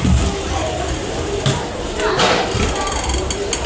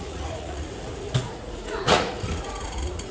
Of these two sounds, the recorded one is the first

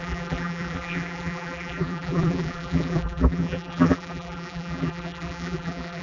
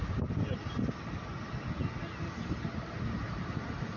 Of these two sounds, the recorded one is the second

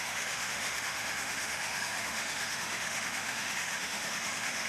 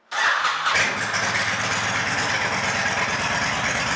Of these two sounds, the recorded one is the second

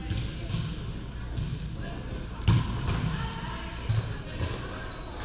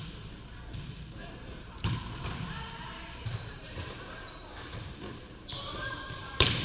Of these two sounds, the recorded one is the first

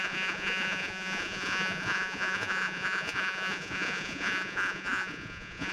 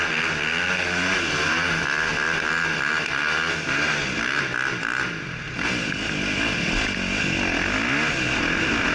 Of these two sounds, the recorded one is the second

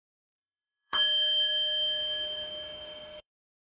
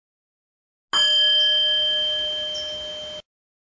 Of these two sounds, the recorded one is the second